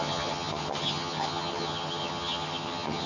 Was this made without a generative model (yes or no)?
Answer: no